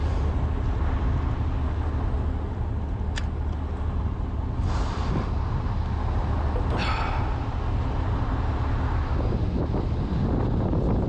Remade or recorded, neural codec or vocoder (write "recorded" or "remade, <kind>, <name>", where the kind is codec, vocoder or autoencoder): recorded